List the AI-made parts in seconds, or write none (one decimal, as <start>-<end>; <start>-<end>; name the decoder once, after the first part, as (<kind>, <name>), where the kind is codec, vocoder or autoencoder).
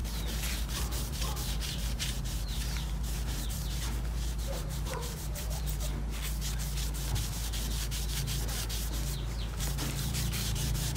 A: 0.5-5.9 (vocoder, BigVGAN v2); 9.6-11.0